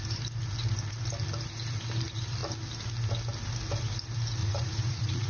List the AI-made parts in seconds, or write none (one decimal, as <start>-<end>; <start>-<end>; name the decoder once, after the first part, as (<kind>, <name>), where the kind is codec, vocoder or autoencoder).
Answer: 4.4-5.3 (vocoder, Vocos)